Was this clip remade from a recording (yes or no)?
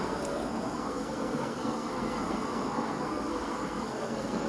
yes